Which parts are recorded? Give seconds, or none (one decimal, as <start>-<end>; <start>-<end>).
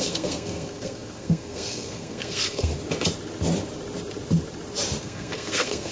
2.7-5.0